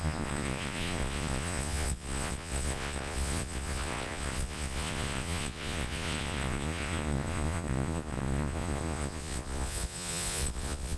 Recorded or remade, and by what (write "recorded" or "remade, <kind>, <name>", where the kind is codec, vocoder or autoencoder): remade, vocoder, Vocos